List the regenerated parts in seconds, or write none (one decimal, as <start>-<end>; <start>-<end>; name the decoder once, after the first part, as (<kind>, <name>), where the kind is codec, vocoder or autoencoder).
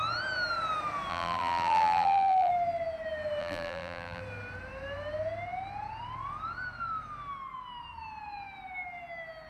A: 1.1-2.5 (vocoder, BigVGAN v2); 3.4-4.2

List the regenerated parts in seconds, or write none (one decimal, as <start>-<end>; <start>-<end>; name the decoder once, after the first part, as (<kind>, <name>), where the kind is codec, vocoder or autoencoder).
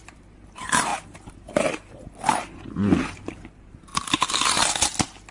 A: 0.0-0.9 (vocoder, BigVGAN v2); 3.5-3.9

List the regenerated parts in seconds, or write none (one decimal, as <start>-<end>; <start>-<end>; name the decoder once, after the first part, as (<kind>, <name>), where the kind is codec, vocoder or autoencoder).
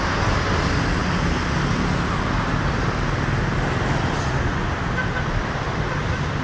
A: 0.0-1.0 (vocoder, BigVGAN v2); 4.8-6.4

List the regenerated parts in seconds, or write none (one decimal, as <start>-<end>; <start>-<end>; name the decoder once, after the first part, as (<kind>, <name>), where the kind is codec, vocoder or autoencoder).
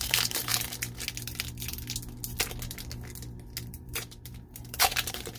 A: 0.0-0.5 (vocoder, BigVGAN v2); 3.7-5.4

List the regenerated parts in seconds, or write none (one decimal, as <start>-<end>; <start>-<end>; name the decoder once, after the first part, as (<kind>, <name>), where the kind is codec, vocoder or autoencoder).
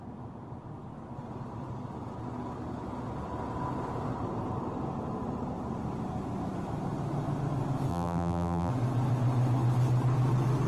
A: 7.9-8.7 (vocoder, BigVGAN v2)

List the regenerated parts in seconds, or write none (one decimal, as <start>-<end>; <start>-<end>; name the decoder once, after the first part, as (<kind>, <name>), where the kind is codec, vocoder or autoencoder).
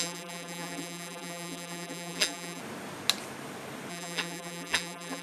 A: 0.0-2.6 (vocoder, BigVGAN v2); 3.9-5.2